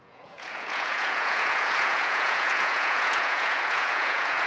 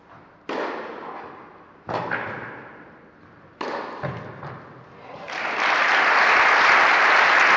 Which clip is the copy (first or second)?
first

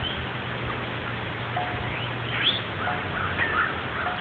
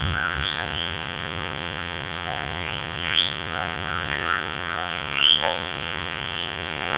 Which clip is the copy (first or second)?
second